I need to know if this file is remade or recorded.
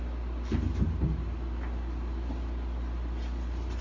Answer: recorded